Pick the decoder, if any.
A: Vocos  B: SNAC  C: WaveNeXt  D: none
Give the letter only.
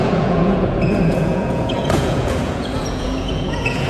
A